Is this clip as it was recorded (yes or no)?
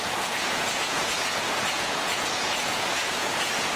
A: no